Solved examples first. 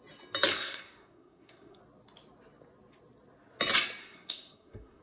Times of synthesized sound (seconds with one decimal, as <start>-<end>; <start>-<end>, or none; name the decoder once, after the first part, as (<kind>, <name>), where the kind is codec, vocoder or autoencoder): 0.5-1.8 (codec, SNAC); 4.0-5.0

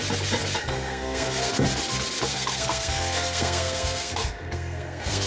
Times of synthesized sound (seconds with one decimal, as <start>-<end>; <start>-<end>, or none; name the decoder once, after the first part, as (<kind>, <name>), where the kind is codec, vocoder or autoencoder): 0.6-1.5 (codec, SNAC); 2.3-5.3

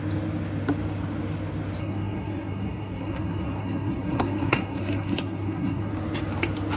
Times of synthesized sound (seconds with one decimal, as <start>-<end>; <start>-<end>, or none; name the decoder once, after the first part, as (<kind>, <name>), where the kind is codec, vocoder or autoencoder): 1.8-5.9 (codec, SNAC)